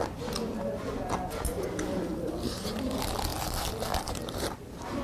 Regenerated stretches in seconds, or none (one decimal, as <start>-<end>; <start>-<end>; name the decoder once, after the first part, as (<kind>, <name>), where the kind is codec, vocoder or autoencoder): none